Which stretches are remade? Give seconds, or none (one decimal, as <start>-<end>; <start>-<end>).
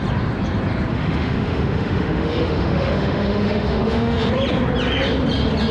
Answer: 0.9-4.3